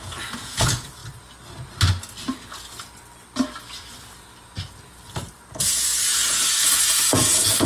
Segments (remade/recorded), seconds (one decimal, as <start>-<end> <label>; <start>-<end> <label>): 0.0-1.0 remade; 1.0-5.6 recorded; 5.6-7.7 remade